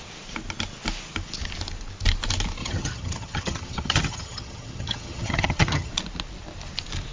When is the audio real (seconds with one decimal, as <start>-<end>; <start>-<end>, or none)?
0.0-2.6; 5.9-7.1